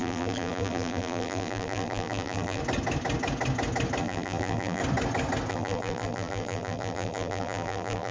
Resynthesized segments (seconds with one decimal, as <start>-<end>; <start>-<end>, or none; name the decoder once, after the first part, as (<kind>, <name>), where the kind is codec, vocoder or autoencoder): 0.0-2.6 (vocoder, BigVGAN v2); 4.0-4.8; 5.5-8.1